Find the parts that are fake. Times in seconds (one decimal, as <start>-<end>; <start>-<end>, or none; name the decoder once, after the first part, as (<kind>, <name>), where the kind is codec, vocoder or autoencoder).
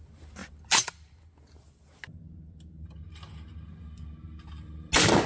none